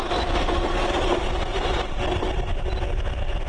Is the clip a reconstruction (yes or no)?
no